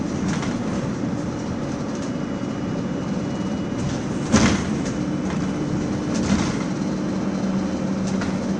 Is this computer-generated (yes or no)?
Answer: no